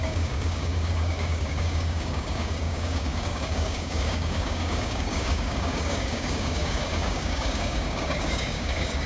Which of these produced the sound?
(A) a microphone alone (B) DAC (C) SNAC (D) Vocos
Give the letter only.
B